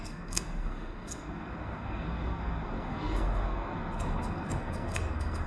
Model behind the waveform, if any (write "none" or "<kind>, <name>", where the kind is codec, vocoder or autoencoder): codec, SNAC